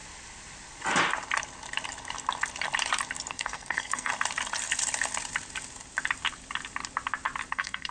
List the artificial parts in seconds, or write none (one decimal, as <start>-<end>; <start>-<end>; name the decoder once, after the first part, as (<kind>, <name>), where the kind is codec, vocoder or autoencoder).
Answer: 3.3-4.1 (codec, SNAC); 7.5-7.9